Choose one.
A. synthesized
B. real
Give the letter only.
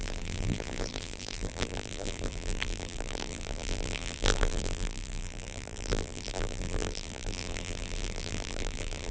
A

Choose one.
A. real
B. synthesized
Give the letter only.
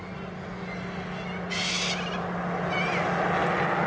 A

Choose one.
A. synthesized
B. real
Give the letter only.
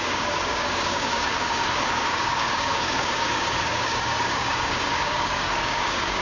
A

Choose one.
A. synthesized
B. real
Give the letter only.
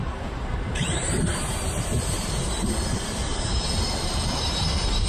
A